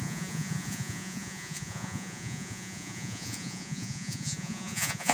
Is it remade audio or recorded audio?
remade